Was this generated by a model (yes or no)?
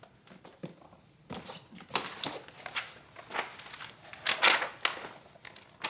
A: no